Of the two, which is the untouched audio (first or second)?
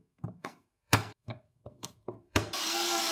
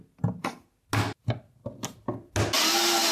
second